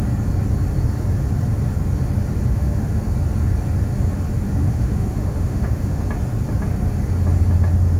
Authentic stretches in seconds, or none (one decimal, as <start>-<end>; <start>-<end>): 0.0-2.5; 3.0-4.6; 6.0-8.0